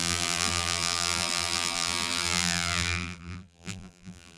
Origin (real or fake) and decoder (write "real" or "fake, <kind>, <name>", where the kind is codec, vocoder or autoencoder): fake, vocoder, BigVGAN v2